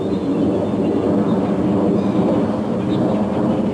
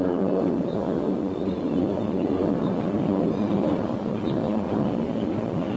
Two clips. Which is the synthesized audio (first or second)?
second